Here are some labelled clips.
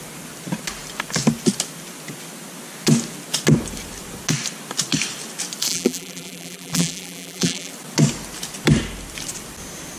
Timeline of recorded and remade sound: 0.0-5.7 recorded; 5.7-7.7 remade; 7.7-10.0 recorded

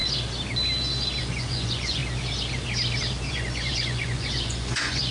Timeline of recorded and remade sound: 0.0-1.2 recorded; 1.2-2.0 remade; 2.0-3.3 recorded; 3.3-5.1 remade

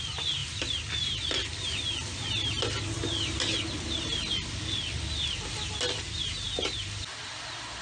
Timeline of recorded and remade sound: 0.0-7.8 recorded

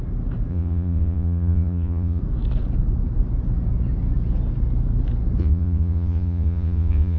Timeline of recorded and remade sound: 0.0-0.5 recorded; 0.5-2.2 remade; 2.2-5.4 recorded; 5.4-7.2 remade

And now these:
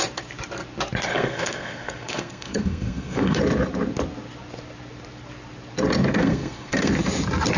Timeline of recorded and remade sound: 0.0-1.1 recorded; 1.1-3.4 remade; 3.4-6.2 recorded; 6.2-6.9 remade; 6.9-7.6 recorded